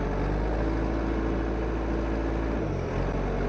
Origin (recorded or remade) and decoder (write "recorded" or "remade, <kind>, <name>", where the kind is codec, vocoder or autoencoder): recorded